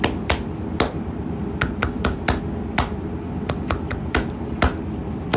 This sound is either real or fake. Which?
real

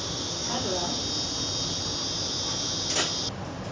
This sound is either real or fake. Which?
real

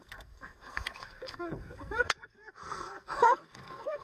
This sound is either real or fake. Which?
fake